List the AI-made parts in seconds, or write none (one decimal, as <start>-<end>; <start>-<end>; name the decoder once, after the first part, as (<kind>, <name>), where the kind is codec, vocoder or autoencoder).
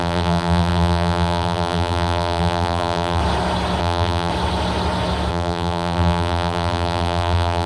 0.0-3.2 (vocoder, BigVGAN v2); 3.8-4.3; 5.3-7.7